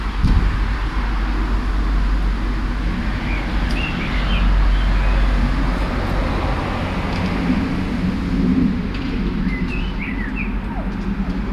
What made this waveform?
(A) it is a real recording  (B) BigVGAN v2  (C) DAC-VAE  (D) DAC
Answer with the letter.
A